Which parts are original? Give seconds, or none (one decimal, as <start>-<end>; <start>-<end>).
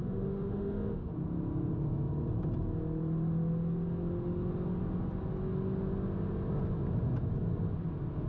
1.1-8.3